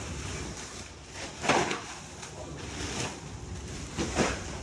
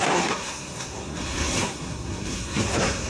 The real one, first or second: first